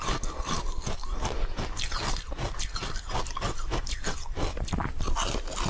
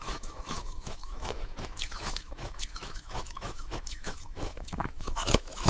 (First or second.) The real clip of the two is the first